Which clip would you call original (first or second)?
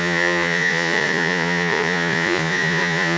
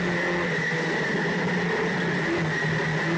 second